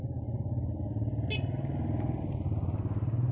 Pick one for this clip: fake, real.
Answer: real